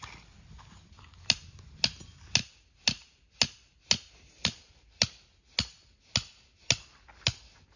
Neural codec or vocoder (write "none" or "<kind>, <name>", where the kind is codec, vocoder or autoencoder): none